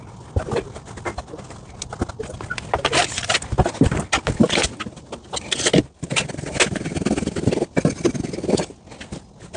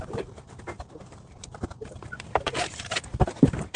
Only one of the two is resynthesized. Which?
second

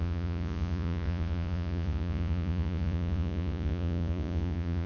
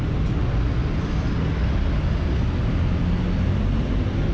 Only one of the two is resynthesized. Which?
first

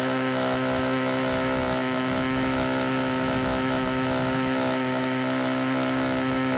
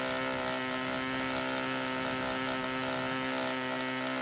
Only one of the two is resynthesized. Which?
first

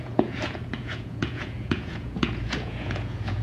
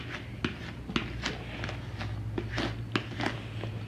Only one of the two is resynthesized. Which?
first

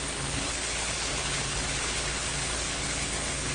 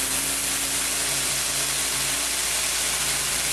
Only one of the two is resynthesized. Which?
first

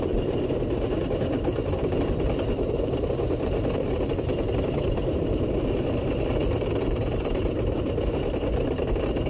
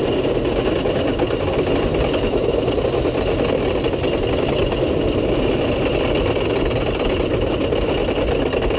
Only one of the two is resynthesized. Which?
first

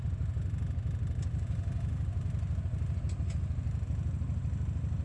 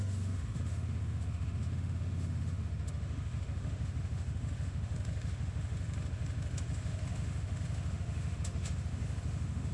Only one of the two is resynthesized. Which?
second